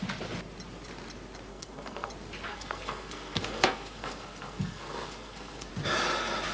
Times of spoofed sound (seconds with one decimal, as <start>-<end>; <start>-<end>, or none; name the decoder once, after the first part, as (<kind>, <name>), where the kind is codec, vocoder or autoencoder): 1.5-2.1 (codec, SNAC); 2.5-5.7